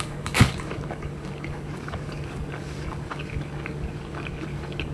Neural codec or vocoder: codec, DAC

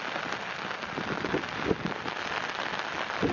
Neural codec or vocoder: none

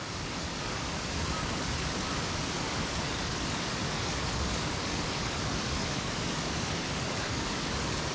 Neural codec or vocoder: codec, DAC